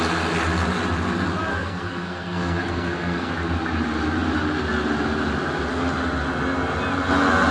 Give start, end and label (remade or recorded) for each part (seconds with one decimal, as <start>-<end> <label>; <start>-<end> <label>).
0.0-1.5 recorded; 1.5-3.3 remade; 3.3-7.5 recorded